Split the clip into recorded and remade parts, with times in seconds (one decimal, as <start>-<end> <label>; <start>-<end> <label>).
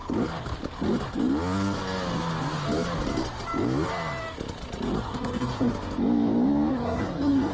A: 0.0-5.1 recorded; 5.1-5.7 remade; 5.7-6.7 recorded; 6.7-7.5 remade